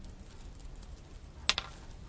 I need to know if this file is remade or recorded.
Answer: recorded